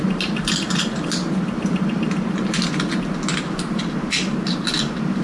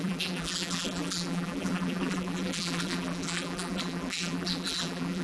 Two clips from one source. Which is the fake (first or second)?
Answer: second